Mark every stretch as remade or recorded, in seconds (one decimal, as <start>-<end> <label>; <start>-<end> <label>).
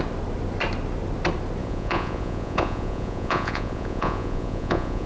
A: 0.0-1.6 recorded; 1.6-5.1 remade